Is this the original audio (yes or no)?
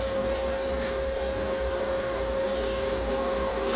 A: no